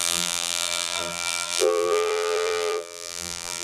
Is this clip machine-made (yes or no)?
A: yes